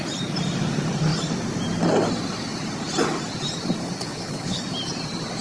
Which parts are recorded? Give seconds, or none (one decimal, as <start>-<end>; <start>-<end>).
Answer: 0.0-4.0; 4.6-5.4